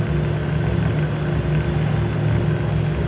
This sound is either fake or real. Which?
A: real